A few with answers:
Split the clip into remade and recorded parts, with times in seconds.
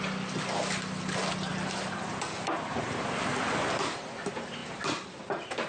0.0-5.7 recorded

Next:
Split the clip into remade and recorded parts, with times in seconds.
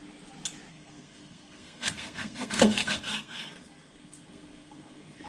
0.0-0.7 recorded; 0.7-5.3 remade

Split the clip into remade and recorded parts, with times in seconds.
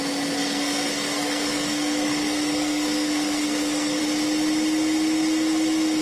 0.0-0.4 recorded; 0.4-4.0 remade; 4.0-6.0 recorded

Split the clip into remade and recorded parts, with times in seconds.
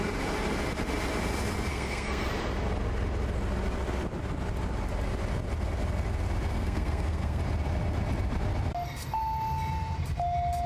0.0-1.7 recorded; 1.7-2.3 remade; 2.3-6.5 recorded; 6.5-7.4 remade; 7.4-10.7 recorded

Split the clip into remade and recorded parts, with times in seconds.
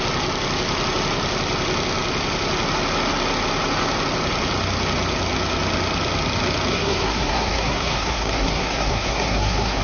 0.0-6.7 recorded; 6.7-9.8 remade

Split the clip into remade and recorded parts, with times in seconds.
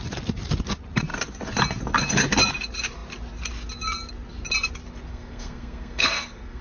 0.0-5.1 recorded; 5.1-6.6 remade